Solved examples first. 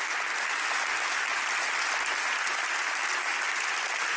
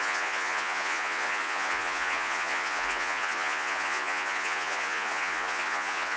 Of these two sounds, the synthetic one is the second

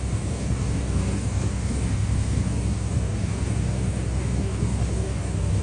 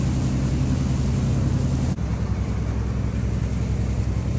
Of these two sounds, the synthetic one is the first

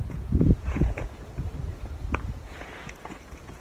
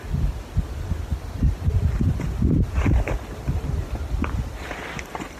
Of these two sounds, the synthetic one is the first